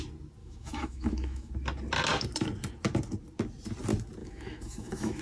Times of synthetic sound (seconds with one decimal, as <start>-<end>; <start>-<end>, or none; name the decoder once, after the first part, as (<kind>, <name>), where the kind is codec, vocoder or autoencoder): 0.4-1.5 (autoencoder, DAC-VAE); 4.2-5.2